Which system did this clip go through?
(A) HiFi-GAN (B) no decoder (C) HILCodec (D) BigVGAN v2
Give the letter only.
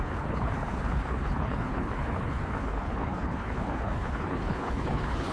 C